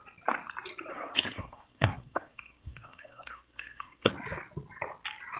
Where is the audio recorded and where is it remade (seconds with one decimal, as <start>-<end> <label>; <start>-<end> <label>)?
0.0-0.9 recorded; 0.9-4.1 remade; 4.1-5.4 recorded